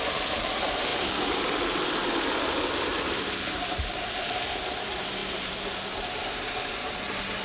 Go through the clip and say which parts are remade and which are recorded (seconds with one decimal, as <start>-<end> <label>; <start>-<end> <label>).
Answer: 0.0-5.2 recorded; 5.2-6.1 remade; 6.1-7.4 recorded